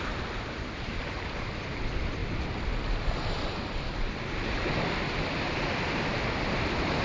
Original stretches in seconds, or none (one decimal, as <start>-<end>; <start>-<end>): 0.0-7.0